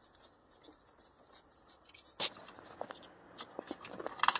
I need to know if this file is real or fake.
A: real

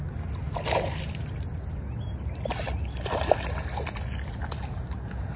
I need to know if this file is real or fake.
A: real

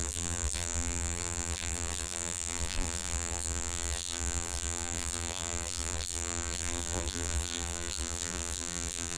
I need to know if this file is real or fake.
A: fake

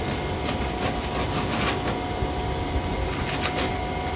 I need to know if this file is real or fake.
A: real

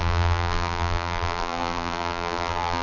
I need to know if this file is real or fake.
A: fake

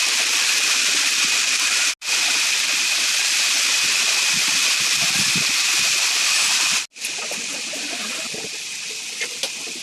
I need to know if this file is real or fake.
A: real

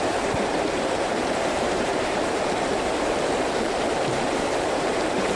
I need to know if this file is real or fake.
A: fake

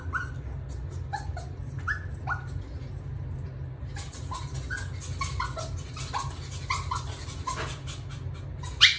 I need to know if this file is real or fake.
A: real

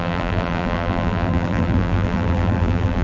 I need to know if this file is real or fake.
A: fake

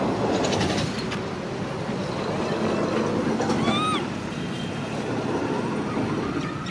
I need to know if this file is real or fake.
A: real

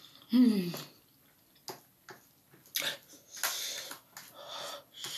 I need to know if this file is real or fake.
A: real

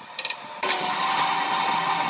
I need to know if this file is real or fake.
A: real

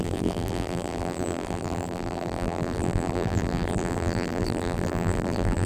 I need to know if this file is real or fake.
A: fake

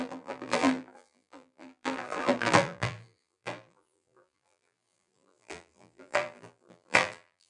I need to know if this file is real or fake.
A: fake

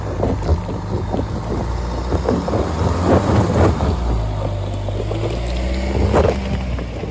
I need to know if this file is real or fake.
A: real